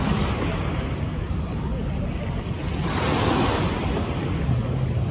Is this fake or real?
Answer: real